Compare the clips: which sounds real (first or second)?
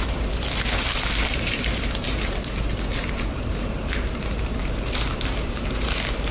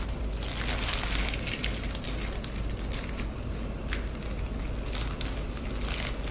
second